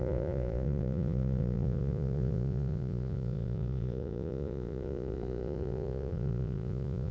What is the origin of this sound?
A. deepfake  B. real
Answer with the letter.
A